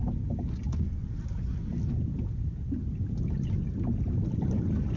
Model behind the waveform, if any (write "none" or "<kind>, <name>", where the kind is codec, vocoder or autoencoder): none